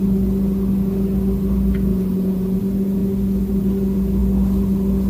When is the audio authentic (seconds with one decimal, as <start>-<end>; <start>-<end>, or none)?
0.0-1.9; 2.6-5.1